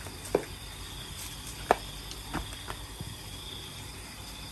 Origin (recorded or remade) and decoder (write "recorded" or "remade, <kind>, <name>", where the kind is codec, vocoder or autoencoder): recorded